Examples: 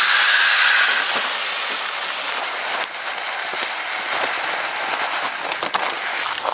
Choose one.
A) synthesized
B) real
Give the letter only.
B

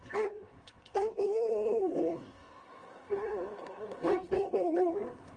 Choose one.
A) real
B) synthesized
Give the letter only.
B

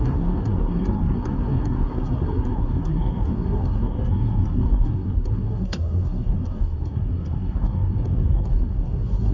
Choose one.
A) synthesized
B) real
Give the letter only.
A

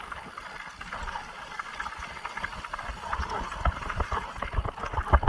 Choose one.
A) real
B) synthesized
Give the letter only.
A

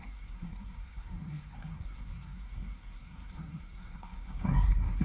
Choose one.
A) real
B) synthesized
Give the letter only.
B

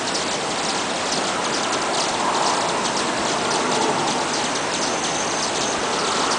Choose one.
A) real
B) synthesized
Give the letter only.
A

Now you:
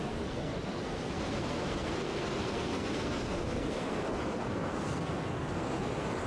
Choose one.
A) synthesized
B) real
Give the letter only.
A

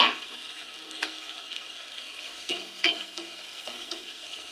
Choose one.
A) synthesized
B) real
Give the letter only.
A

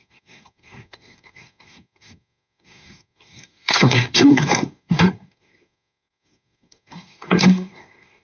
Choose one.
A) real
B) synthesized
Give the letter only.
B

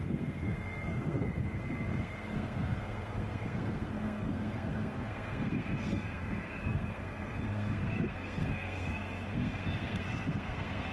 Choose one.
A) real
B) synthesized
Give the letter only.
B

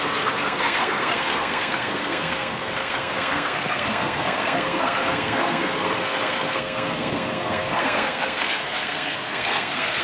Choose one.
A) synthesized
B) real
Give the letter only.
A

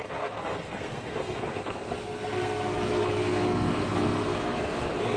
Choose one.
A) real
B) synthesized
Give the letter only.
B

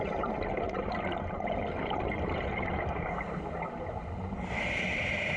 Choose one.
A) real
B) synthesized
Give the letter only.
A